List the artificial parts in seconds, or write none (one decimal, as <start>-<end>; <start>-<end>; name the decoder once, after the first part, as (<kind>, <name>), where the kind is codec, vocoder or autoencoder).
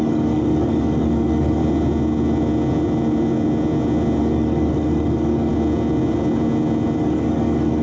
0.0-1.6 (codec, DAC); 4.2-5.5; 7.0-7.8